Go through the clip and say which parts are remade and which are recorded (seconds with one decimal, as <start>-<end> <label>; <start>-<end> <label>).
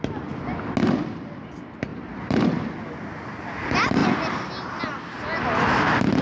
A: 0.0-1.9 recorded; 1.9-2.7 remade; 2.7-6.2 recorded